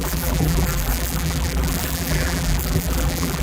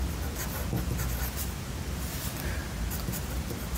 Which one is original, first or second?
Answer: second